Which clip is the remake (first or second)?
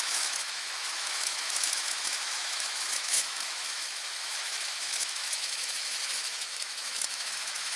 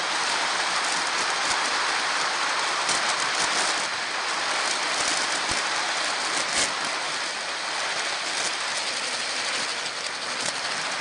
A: first